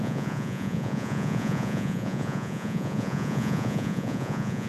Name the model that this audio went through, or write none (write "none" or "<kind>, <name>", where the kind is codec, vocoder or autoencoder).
vocoder, Vocos